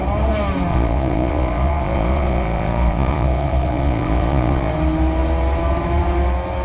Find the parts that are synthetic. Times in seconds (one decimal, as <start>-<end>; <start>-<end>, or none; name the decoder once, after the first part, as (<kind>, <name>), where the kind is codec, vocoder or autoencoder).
0.7-4.7 (vocoder, Vocos)